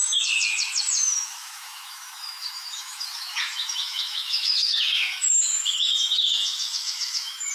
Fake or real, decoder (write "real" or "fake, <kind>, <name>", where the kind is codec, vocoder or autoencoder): fake, autoencoder, DAC-VAE